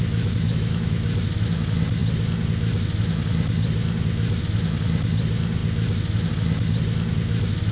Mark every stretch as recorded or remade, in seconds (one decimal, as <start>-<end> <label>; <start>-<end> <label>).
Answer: 0.0-1.1 remade; 1.1-7.7 recorded